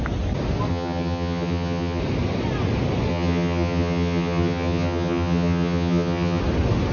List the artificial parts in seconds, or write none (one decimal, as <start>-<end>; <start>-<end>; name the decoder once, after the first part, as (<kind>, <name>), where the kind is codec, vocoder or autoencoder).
0.7-2.0 (vocoder, HiFi-GAN); 3.1-6.4